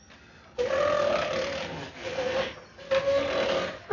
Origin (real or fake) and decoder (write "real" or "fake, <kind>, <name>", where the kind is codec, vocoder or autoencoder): real